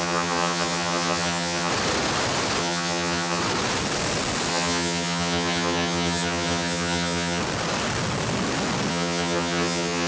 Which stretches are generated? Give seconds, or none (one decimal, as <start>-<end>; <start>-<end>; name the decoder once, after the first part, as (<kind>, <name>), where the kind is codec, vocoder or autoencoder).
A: 0.0-1.7 (vocoder, HiFi-GAN); 2.6-3.4; 4.5-7.4; 8.9-10.1